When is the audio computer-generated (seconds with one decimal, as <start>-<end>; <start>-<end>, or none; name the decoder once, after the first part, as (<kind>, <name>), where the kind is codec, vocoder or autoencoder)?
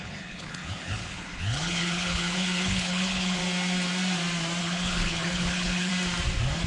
0.0-3.4 (codec, HILCodec); 4.6-5.9